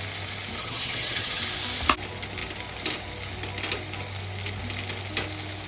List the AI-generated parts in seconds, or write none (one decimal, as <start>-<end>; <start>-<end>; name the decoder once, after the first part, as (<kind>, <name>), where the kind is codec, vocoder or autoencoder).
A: 0.6-1.4 (vocoder, HiFi-GAN)

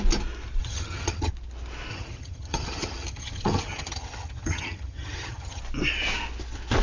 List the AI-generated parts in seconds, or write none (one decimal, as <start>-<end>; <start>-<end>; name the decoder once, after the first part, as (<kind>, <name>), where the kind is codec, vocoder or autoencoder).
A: 0.6-1.3 (vocoder, HiFi-GAN); 1.9-5.6

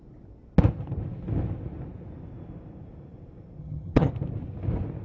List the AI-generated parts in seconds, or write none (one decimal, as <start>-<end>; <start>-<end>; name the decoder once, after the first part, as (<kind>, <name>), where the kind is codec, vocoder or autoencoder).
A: 3.6-4.1 (vocoder, HiFi-GAN)